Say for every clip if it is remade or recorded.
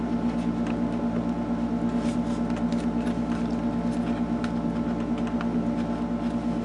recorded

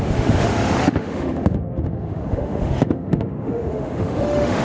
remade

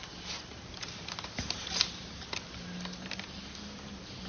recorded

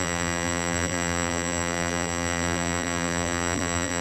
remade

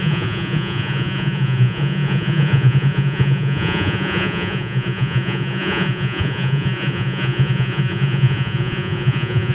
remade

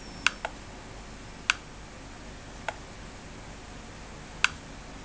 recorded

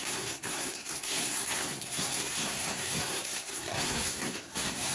remade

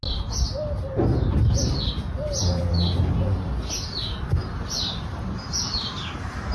recorded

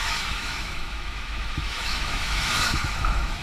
remade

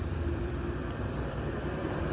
remade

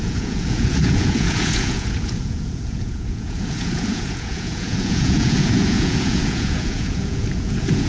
remade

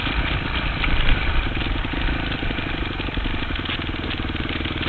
recorded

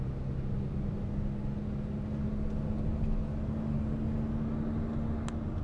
recorded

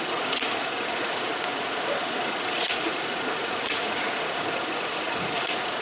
remade